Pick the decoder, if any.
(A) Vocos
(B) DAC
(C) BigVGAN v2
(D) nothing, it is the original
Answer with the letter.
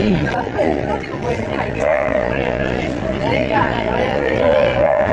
A